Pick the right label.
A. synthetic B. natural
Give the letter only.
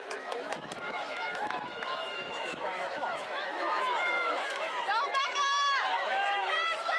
A